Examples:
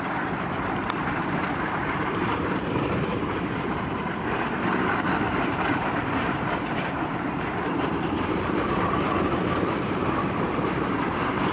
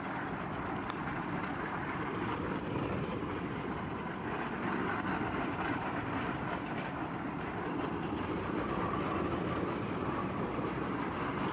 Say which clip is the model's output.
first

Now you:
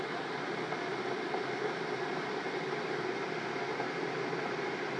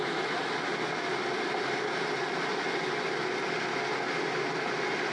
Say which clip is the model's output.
first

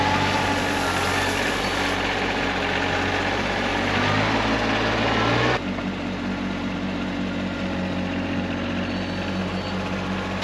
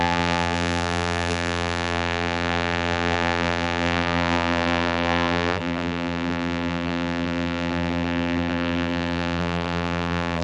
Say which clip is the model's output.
second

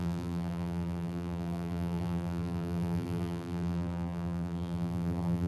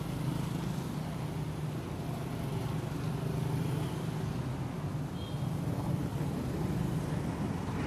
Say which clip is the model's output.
first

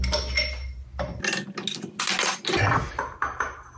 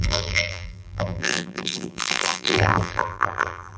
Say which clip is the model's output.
second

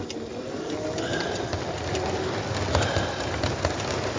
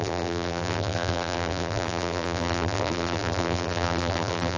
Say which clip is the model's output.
second